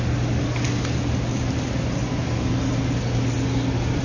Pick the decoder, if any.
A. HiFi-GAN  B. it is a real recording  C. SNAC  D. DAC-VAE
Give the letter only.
B